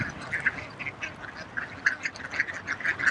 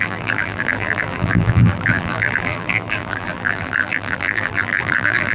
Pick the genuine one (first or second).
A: first